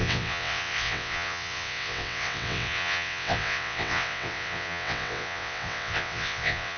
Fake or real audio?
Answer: fake